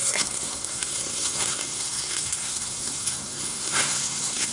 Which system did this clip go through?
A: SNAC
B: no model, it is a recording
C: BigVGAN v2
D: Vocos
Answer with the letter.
A